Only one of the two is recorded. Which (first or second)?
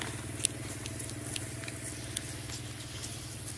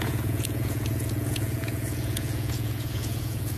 first